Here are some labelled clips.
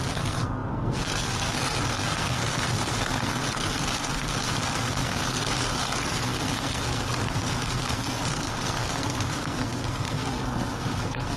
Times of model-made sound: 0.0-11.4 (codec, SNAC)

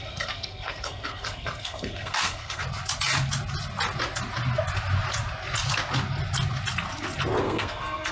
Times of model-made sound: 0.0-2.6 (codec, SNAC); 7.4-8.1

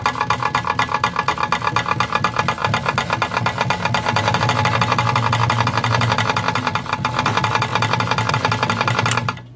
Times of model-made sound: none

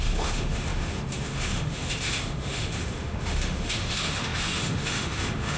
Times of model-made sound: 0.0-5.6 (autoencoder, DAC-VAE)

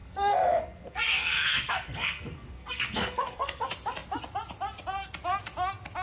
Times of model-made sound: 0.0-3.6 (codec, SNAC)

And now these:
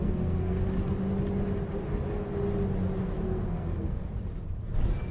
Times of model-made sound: 0.0-0.6 (codec, SNAC); 3.0-4.1